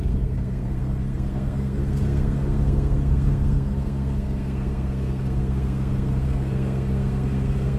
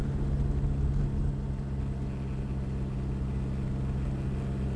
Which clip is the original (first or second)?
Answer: second